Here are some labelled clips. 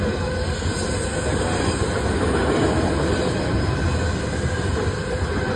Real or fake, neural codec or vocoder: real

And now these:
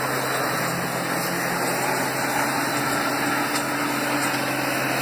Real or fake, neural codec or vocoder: real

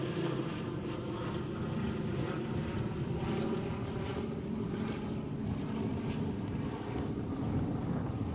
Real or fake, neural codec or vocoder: real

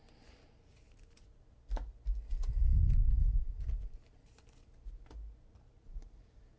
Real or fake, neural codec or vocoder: real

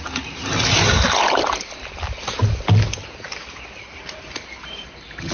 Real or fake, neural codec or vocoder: real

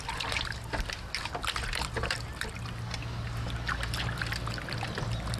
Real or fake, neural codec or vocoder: real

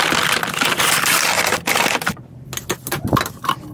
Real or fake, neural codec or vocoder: real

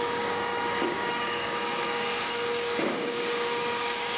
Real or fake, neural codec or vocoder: fake, codec, DAC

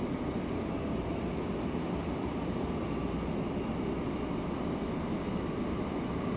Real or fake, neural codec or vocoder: real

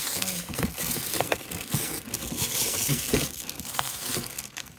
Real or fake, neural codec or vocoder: fake, codec, SNAC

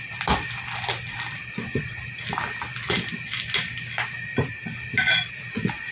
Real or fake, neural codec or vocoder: real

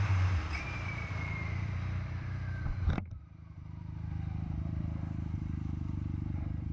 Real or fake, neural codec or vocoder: fake, vocoder, BigVGAN v2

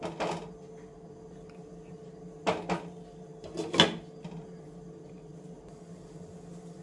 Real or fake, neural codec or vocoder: real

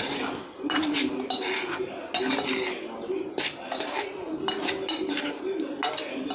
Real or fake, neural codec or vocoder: real